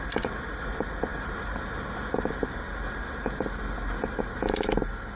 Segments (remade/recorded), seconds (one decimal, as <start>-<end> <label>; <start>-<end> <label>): 0.0-5.2 recorded